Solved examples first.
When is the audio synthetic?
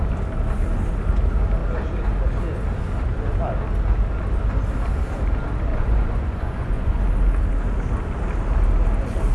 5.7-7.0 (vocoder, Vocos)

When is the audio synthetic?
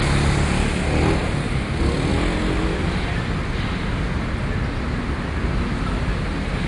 none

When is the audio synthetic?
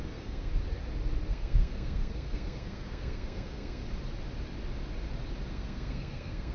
0.0-0.5 (codec, SNAC); 1.3-3.8; 5.5-6.5